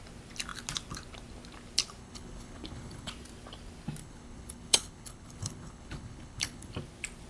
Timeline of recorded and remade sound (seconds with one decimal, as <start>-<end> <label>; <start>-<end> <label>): 0.0-2.0 recorded; 2.0-3.1 remade; 3.1-4.0 recorded; 4.0-6.7 remade; 6.7-7.3 recorded